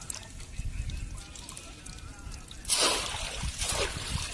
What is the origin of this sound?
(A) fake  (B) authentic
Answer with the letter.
B